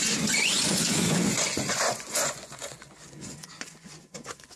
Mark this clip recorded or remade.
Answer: remade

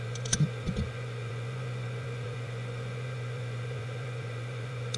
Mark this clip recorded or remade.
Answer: remade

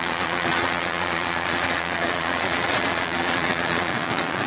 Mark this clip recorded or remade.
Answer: remade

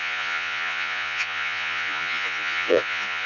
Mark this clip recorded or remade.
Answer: remade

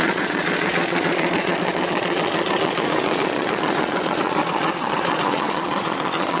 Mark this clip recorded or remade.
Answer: remade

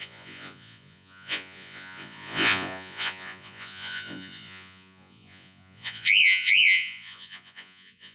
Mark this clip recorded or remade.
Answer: remade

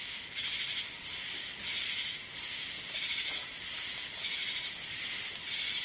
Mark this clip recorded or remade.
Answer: recorded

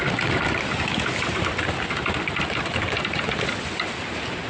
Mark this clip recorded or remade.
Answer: recorded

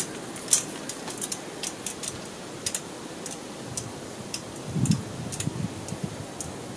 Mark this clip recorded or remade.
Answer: recorded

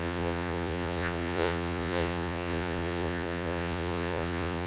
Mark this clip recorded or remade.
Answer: remade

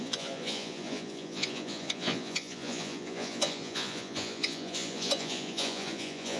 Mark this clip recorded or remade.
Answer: remade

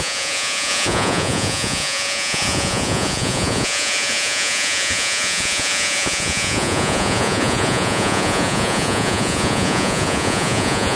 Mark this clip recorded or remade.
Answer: remade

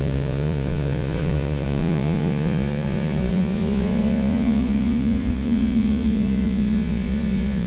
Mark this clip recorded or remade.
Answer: remade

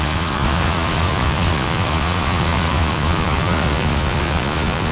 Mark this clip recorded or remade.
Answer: remade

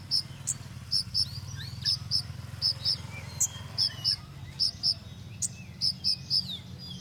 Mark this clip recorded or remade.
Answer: recorded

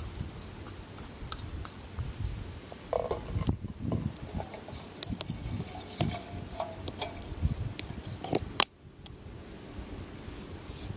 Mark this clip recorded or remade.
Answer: recorded